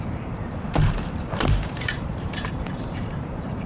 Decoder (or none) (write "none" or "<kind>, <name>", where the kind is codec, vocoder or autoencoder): vocoder, BigVGAN v2